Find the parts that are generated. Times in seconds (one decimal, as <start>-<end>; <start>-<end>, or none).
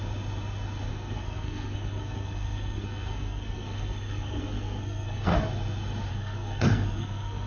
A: 0.9-5.4; 6.1-7.5